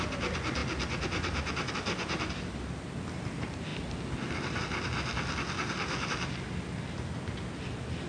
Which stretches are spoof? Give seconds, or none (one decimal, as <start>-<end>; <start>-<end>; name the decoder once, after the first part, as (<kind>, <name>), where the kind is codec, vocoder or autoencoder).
none